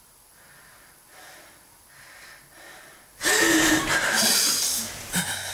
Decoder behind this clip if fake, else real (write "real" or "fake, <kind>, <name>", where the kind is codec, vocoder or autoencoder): real